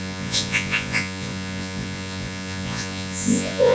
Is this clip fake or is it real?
fake